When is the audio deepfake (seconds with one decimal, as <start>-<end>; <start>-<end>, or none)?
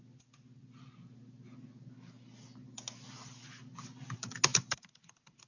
4.5-5.5